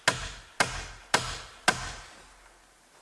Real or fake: real